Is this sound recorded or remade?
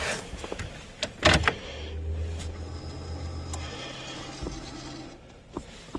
recorded